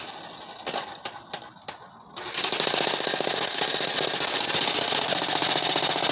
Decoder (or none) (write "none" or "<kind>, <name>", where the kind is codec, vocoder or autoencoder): none